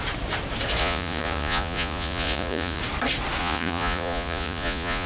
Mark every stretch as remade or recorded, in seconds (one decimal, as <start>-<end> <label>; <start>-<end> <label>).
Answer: 0.0-0.8 recorded; 0.8-2.8 remade; 2.8-3.4 recorded; 3.4-5.1 remade